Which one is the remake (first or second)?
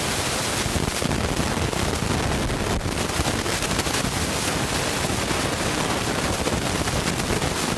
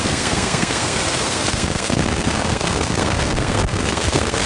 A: second